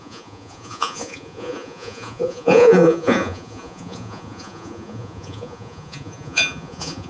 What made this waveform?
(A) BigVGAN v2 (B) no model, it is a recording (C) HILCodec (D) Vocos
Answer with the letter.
D